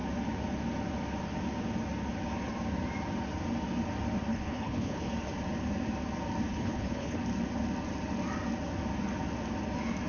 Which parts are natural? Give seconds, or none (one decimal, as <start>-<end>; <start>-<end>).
0.0-4.3; 5.1-6.5; 7.2-10.1